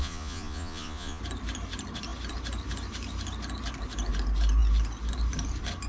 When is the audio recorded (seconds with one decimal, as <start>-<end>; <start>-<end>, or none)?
1.2-5.9